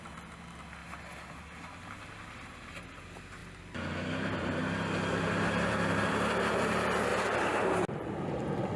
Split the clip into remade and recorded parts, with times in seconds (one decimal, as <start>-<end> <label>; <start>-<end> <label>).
0.0-7.1 recorded; 7.1-7.6 remade; 7.6-8.8 recorded